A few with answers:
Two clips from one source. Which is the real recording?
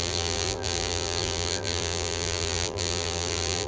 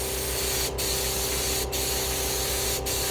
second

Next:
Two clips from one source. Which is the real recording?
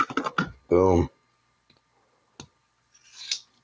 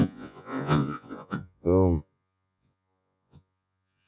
first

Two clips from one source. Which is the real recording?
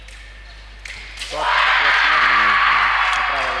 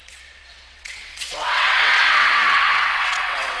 first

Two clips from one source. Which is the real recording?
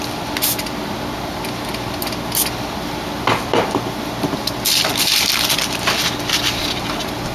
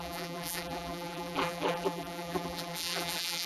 first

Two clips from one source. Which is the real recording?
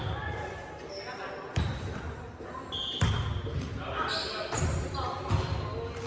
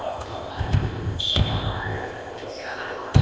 first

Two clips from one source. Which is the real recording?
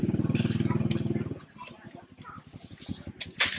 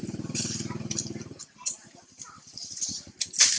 first